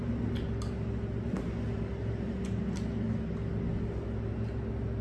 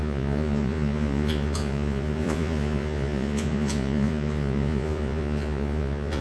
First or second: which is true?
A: first